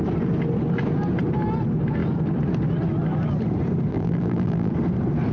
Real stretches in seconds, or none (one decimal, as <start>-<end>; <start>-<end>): 0.0-3.9; 4.7-5.3